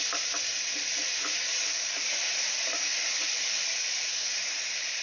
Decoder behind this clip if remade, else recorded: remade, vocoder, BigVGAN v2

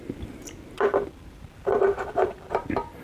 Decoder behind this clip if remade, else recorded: remade, vocoder, BigVGAN v2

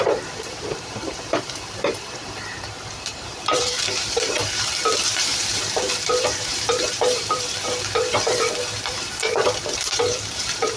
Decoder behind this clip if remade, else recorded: remade, vocoder, BigVGAN v2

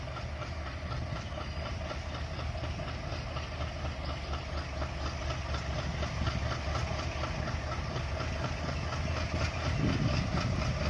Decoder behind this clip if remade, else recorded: recorded